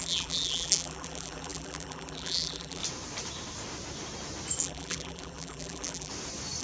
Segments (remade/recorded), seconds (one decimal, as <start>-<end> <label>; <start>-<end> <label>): 0.0-2.8 remade; 2.8-4.6 recorded; 4.6-6.1 remade; 6.1-6.6 recorded